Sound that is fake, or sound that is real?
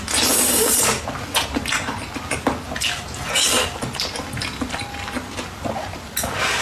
real